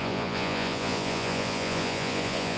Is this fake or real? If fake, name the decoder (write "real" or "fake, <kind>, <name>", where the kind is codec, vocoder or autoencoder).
fake, vocoder, Vocos